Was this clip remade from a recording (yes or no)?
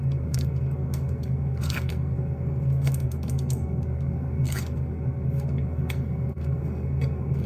yes